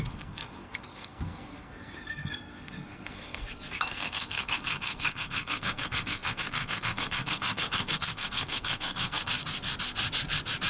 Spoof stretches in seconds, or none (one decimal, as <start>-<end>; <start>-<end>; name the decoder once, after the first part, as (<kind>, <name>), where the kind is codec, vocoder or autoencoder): 0.0-9.4 (codec, SNAC)